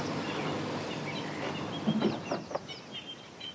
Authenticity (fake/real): real